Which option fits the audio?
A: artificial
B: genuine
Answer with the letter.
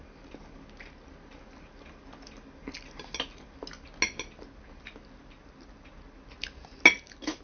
B